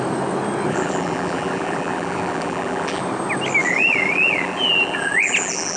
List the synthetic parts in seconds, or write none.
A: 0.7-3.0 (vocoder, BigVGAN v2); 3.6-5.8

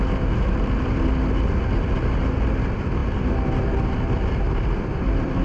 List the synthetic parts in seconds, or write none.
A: 0.0-3.0 (vocoder, BigVGAN v2); 4.8-5.4

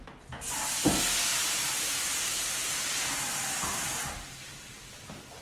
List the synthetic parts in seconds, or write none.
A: 1.3-4.5 (vocoder, BigVGAN v2)

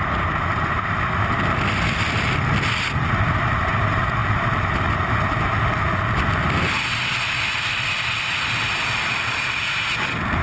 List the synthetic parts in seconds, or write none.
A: none

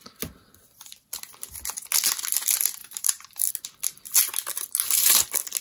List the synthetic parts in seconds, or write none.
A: 2.8-3.5 (vocoder, BigVGAN v2)

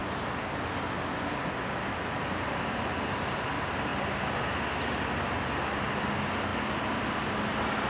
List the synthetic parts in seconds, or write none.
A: 3.9-4.5 (vocoder, BigVGAN v2); 6.5-7.3